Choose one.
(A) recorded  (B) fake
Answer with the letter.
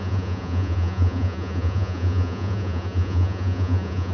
B